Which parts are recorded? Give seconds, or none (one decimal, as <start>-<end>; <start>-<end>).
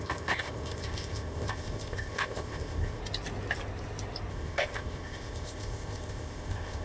3.0-4.3